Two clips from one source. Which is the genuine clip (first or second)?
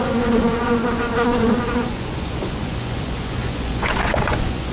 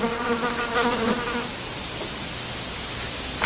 second